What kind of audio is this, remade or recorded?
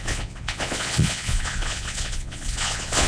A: remade